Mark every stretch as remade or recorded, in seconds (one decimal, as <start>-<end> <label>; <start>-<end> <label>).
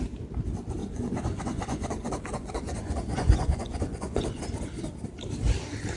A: 0.0-0.8 recorded; 0.8-4.4 remade; 4.4-6.0 recorded